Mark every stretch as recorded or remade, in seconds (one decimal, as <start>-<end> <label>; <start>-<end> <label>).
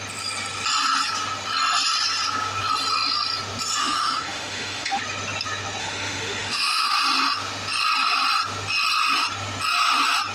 0.0-3.8 recorded; 3.8-5.0 remade; 5.0-5.8 recorded; 5.8-6.9 remade; 6.9-10.3 recorded